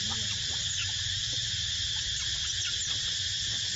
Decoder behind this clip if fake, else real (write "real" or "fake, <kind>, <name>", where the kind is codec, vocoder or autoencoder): real